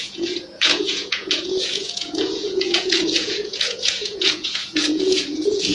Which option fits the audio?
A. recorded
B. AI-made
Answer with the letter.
B